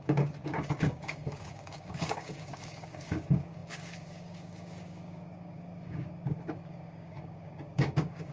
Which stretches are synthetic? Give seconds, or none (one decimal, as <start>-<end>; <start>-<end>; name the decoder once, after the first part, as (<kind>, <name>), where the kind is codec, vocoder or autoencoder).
0.0-8.3 (codec, DAC)